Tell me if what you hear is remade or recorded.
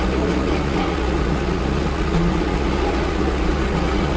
remade